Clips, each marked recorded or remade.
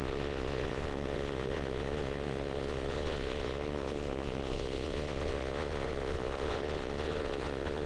remade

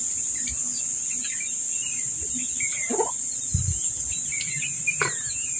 recorded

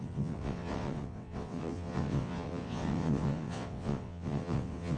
remade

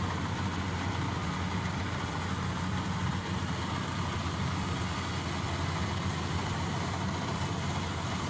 recorded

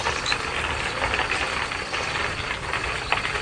remade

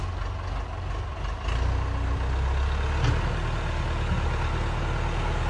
recorded